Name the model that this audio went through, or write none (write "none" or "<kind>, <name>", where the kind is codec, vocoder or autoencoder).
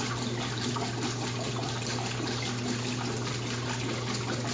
none